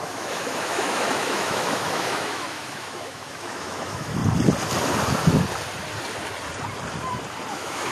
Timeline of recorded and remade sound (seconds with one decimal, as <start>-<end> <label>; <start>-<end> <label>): 0.0-4.2 remade; 4.2-7.5 recorded; 7.5-7.9 remade